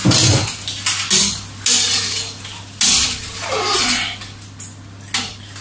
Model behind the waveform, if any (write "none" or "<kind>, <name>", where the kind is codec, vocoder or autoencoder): none